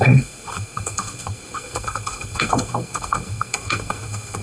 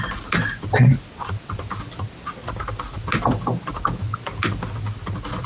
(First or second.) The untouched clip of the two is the second